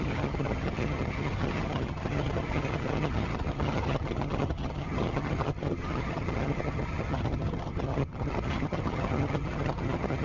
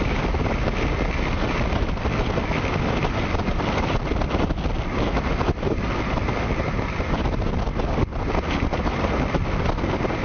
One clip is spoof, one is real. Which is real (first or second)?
second